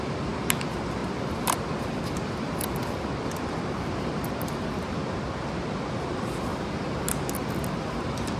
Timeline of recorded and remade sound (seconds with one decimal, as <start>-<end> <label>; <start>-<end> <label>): 0.0-1.0 recorded; 1.0-5.5 remade; 5.5-6.5 recorded; 6.5-7.6 remade; 7.6-8.4 recorded